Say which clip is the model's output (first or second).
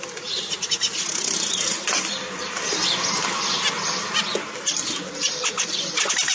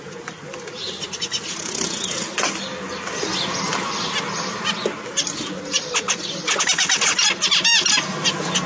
first